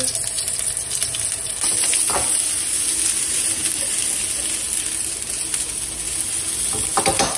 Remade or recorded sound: recorded